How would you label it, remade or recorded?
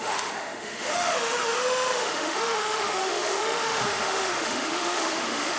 remade